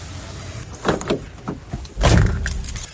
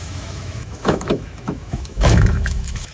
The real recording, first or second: first